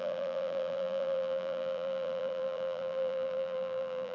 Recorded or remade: remade